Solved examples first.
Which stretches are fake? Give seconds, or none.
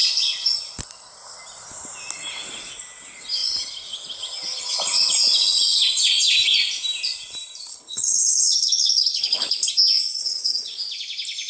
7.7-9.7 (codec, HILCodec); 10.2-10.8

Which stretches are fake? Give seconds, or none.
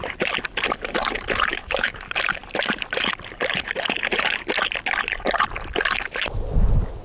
1.5-2.0 (autoencoder, DAC-VAE)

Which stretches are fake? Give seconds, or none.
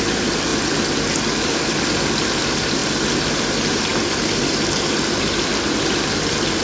0.0-0.5 (vocoder, BigVGAN v2); 1.8-2.8; 3.3-6.6